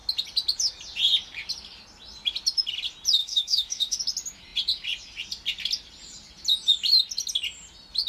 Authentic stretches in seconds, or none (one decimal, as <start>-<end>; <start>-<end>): 0.0-3.2; 4.0-8.1